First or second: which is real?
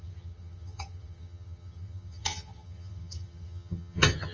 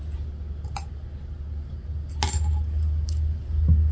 second